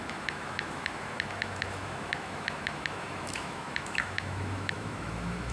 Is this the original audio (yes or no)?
no